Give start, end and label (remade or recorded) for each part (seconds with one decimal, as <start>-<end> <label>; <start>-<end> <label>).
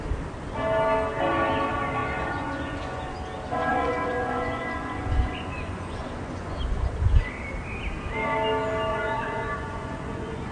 0.0-2.0 recorded; 2.0-3.1 remade; 3.1-3.7 recorded; 3.7-7.3 remade; 7.3-8.9 recorded; 8.9-10.5 remade